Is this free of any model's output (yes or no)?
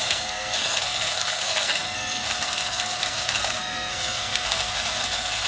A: no